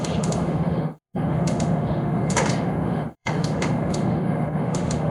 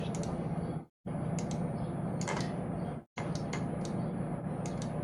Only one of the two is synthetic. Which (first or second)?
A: first